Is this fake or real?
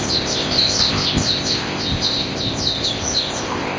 fake